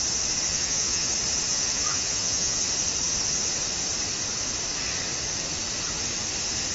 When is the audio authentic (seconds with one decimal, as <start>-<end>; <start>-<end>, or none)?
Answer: 0.0-0.5; 1.1-1.5; 2.6-6.7